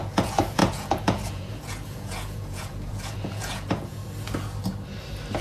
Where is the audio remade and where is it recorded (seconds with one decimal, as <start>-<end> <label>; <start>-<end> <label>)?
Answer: 0.0-4.0 remade; 4.0-5.4 recorded